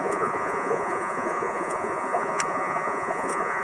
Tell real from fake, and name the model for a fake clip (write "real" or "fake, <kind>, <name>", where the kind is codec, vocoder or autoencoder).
fake, vocoder, Vocos